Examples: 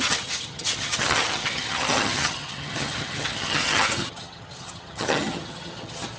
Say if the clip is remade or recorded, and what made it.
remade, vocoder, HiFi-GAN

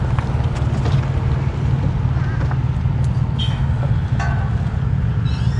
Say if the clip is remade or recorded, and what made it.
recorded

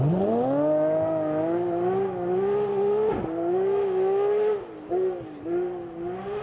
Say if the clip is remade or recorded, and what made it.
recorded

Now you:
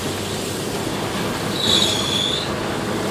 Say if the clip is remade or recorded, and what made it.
recorded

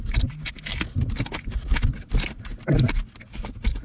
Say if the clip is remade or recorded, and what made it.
recorded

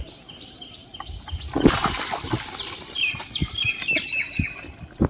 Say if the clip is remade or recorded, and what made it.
recorded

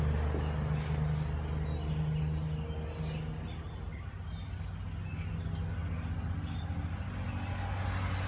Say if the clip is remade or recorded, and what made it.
recorded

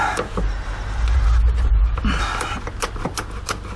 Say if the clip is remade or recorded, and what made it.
recorded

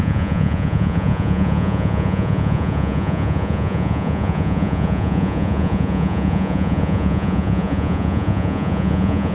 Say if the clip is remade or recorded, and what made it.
remade, vocoder, Vocos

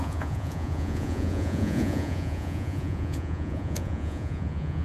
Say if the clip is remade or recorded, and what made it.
remade, vocoder, Vocos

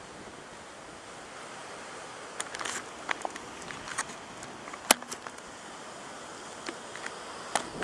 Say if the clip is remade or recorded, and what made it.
recorded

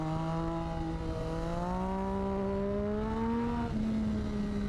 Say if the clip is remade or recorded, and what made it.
recorded